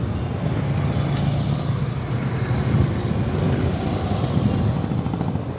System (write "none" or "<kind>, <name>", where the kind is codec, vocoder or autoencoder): none